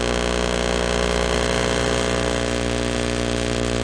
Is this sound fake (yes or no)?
no